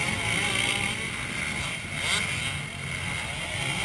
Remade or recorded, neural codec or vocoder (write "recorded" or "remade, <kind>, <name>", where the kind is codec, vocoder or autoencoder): recorded